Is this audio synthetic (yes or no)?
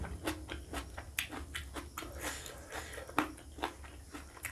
no